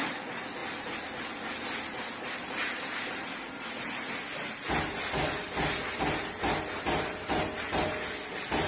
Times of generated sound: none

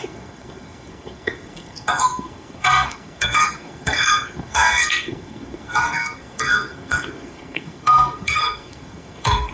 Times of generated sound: 0.0-9.5 (codec, SNAC)

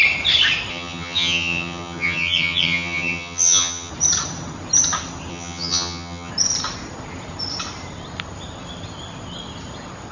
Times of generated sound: 0.7-3.9 (vocoder, HiFi-GAN); 5.3-6.3

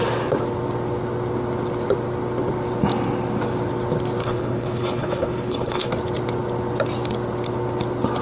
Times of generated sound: 4.2-5.9 (codec, HILCodec)

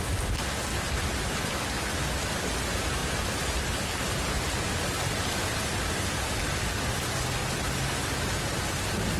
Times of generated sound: none